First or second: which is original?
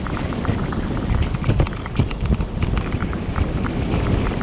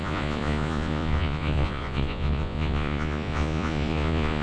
first